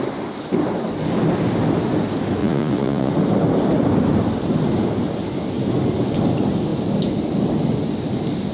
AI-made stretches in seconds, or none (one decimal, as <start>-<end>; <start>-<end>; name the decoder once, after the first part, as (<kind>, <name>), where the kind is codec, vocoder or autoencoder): 2.4-3.1 (vocoder, Vocos)